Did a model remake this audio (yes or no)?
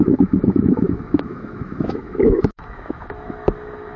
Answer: yes